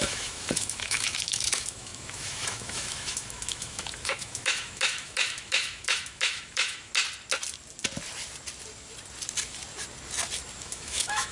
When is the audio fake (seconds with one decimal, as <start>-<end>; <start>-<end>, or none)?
0.0-6.9; 10.6-11.3